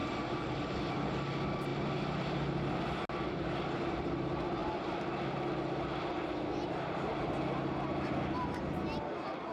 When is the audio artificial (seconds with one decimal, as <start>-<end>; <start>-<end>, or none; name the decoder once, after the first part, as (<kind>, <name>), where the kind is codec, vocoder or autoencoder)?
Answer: 1.7-2.3 (vocoder, BigVGAN v2); 4.6-5.4